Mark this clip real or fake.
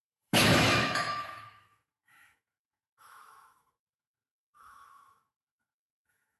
fake